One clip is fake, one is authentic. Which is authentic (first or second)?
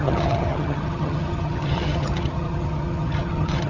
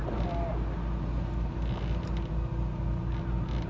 second